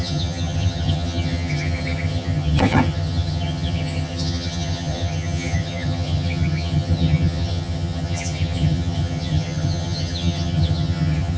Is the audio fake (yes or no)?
yes